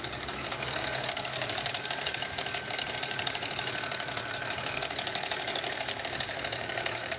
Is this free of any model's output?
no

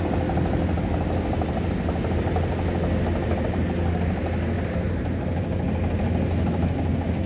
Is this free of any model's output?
yes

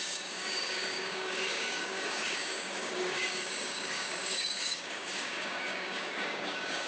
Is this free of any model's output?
no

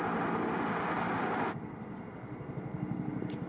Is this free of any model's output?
yes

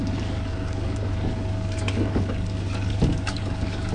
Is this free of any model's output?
no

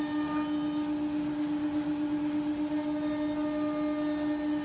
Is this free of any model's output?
yes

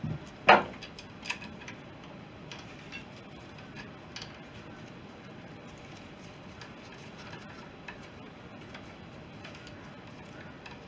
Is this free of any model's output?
yes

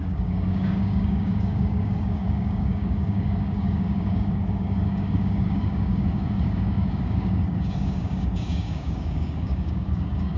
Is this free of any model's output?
no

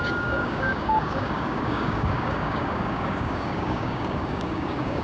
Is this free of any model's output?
no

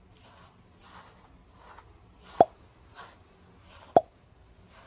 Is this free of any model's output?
yes